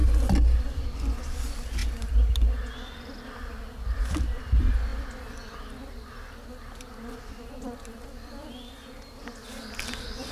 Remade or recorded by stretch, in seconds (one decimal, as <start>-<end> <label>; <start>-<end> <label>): 0.0-10.3 recorded